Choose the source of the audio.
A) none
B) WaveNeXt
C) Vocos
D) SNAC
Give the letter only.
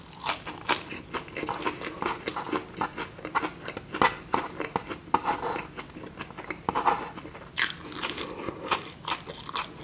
A